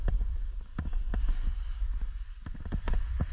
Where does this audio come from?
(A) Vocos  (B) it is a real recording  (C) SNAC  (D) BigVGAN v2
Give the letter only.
B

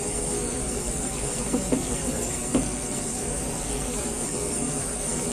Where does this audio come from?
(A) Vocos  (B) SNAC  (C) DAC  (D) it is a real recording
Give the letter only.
B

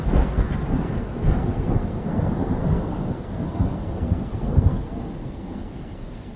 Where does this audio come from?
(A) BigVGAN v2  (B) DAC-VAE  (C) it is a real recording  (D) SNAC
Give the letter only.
D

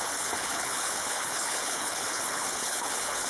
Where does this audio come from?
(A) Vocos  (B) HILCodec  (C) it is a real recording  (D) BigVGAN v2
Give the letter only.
B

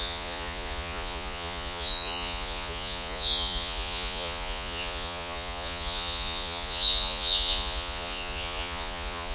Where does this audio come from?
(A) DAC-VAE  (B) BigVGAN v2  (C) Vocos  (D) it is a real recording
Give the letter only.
C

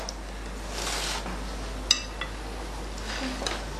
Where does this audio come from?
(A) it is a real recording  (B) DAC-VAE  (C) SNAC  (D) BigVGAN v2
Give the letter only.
A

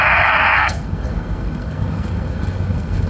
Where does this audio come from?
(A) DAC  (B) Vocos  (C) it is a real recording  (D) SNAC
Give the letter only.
D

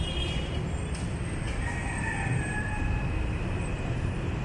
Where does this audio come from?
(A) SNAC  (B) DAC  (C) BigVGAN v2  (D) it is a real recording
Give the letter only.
D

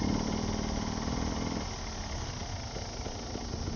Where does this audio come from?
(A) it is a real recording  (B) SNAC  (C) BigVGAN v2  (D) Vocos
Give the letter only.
A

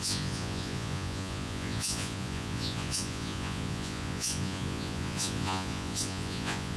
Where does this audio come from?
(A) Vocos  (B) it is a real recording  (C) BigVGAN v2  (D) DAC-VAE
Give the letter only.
A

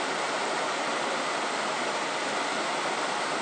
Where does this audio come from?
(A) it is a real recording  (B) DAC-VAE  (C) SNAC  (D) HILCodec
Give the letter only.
A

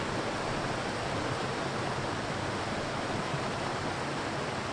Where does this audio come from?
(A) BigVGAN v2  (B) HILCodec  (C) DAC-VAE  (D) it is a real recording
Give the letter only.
D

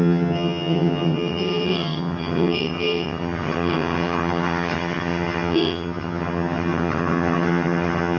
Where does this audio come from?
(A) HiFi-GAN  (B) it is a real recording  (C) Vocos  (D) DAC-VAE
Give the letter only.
A